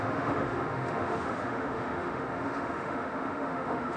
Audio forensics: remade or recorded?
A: remade